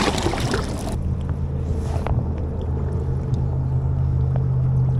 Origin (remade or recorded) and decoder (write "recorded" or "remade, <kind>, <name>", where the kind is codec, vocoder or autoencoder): recorded